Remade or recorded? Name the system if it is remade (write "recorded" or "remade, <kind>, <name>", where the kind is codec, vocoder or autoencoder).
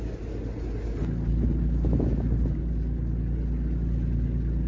recorded